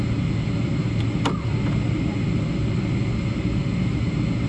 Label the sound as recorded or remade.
recorded